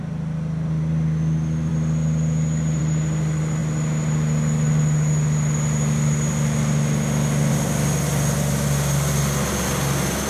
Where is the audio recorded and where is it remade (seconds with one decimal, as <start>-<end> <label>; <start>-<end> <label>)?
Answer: 0.0-10.3 recorded